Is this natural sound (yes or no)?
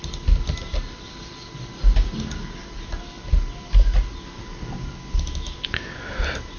yes